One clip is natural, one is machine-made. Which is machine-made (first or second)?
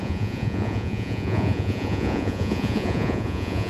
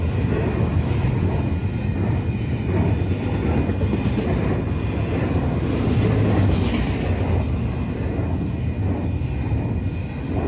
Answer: first